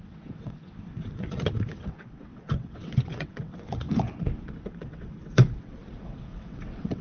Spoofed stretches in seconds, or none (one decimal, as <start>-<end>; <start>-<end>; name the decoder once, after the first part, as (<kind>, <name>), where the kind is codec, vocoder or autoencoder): 0.0-7.0 (vocoder, WaveNeXt)